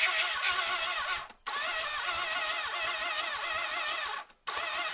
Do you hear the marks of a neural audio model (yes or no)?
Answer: no